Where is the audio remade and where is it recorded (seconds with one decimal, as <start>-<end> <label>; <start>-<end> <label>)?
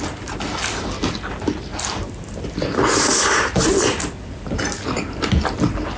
0.0-6.0 recorded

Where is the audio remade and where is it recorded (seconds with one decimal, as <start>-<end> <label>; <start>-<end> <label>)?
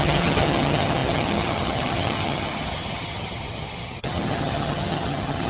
0.0-5.5 remade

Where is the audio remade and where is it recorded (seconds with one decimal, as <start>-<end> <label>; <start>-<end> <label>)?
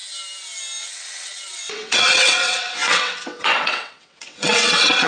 0.0-0.8 recorded; 0.8-5.1 remade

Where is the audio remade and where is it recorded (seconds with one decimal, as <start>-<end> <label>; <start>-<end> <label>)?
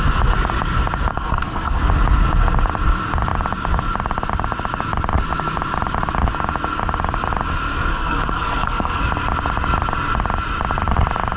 0.0-1.1 recorded; 1.1-1.8 remade; 1.8-7.9 recorded; 7.9-9.0 remade; 9.0-11.4 recorded